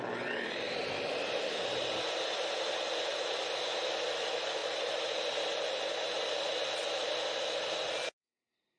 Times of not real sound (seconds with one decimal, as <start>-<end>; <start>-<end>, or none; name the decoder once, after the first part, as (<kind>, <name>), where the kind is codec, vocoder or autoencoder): none